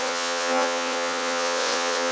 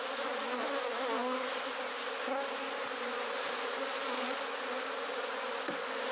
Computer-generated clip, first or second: first